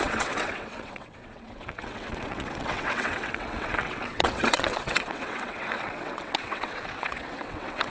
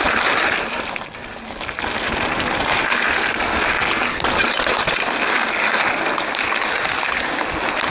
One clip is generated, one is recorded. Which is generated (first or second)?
first